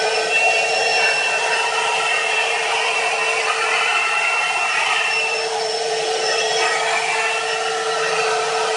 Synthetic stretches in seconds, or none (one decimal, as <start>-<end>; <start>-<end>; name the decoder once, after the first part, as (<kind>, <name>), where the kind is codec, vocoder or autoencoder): 0.0-0.9 (vocoder, BigVGAN v2); 1.5-3.9; 4.4-6.5; 8.1-8.8